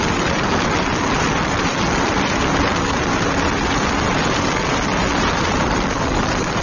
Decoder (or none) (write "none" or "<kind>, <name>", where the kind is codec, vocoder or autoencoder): none